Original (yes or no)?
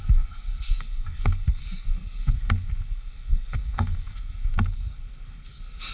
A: no